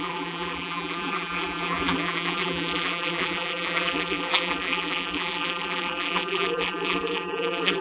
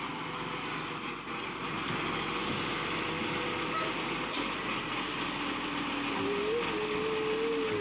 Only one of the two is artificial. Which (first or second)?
first